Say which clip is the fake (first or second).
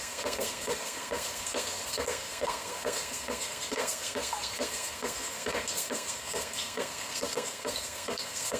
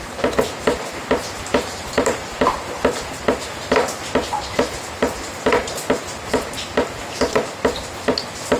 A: first